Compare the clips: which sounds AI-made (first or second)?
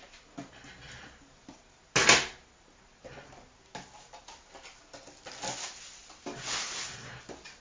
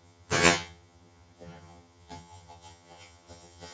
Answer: second